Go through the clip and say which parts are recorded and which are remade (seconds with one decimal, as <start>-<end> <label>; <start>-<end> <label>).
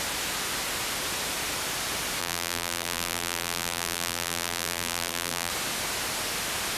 0.0-2.2 recorded; 2.2-5.5 remade; 5.5-6.8 recorded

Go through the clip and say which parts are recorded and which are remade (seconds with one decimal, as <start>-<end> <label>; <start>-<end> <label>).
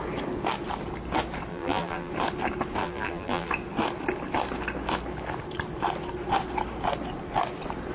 0.0-1.5 recorded; 1.5-2.1 remade; 2.1-2.8 recorded; 2.8-3.5 remade; 3.5-7.9 recorded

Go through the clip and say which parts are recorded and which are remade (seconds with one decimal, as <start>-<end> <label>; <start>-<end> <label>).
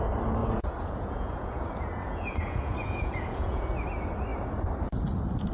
0.0-0.4 recorded; 0.4-3.7 remade; 3.7-5.5 recorded